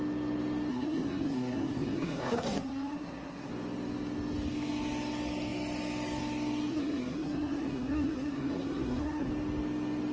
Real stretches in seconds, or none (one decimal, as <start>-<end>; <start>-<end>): 0.0-0.7; 3.5-6.7; 9.3-10.1